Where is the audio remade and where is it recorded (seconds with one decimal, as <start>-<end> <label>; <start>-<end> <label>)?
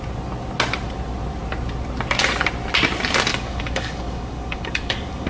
0.0-3.3 recorded; 3.3-5.3 remade